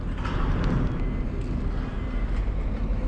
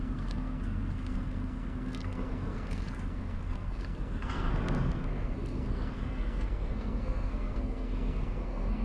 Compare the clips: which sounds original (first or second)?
first